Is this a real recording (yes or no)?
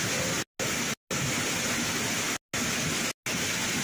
yes